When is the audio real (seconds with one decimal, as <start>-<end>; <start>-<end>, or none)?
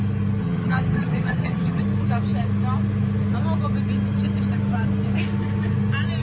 0.0-0.4; 1.8-6.2